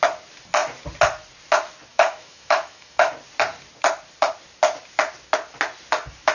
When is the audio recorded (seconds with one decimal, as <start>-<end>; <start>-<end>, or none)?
0.0-1.9; 3.1-6.3